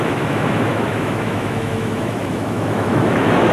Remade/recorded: remade